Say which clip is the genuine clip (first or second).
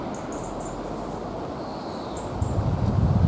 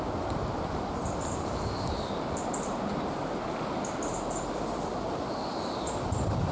first